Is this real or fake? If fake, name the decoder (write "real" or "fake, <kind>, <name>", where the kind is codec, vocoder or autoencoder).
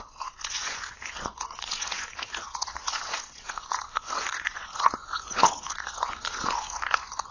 fake, vocoder, Vocos